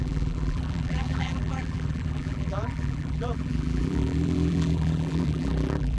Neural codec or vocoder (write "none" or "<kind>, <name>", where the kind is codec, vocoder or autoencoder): vocoder, BigVGAN v2